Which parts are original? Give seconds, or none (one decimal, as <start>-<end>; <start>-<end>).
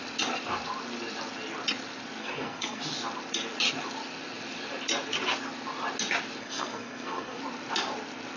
0.0-2.2; 2.8-6.4; 7.4-8.4